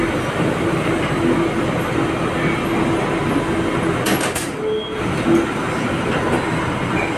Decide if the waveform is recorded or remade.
recorded